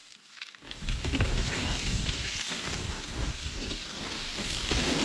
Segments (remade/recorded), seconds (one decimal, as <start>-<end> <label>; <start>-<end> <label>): 0.0-5.0 remade